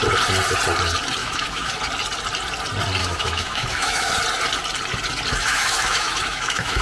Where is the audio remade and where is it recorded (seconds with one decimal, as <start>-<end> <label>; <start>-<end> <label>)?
0.0-1.2 recorded; 1.2-1.8 remade; 1.8-3.0 recorded; 3.0-4.1 remade; 4.1-5.3 recorded; 5.3-6.8 remade